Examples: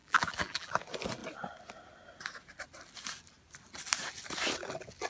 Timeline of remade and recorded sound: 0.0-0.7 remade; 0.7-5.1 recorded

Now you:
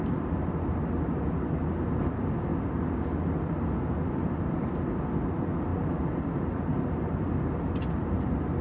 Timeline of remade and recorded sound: 0.0-8.6 recorded

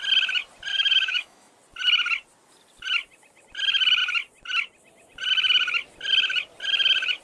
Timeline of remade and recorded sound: 0.0-0.7 recorded; 0.7-1.5 remade; 1.5-7.2 recorded

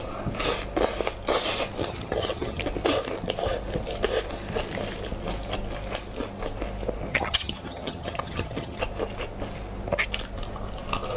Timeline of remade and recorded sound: 0.0-1.8 recorded; 1.8-2.6 remade; 2.6-7.1 recorded; 7.1-8.8 remade; 8.8-11.2 recorded

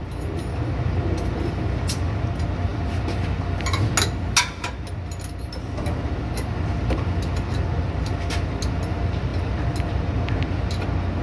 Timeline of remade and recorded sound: 0.0-11.2 recorded